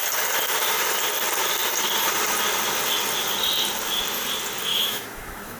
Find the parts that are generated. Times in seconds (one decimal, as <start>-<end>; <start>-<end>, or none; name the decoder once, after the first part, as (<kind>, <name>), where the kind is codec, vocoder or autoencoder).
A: 4.7-5.6 (autoencoder, DAC-VAE)